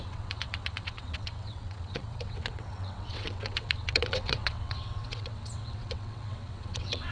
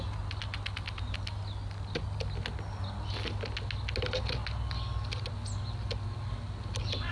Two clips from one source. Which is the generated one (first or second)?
first